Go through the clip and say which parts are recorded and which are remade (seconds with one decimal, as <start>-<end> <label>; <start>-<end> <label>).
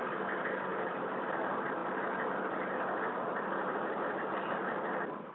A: 0.0-1.8 remade; 1.8-5.3 recorded